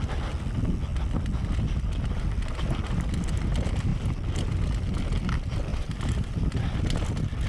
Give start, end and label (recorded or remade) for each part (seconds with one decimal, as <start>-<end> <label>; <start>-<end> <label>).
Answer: 0.0-5.7 recorded; 5.7-6.3 remade; 6.3-7.5 recorded

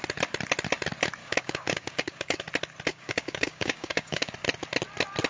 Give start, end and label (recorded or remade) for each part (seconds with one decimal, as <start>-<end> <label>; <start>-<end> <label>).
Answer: 0.0-1.2 recorded; 1.2-2.4 remade; 2.4-2.9 recorded; 2.9-4.3 remade; 4.3-5.3 recorded

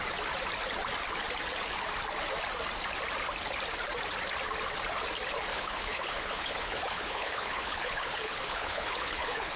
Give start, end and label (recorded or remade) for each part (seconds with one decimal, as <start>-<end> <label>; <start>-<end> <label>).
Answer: 0.0-5.5 recorded; 5.5-9.6 remade